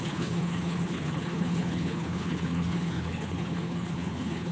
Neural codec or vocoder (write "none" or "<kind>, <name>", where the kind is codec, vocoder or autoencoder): codec, HILCodec